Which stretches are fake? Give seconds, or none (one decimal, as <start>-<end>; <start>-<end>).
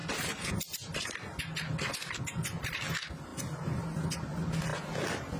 none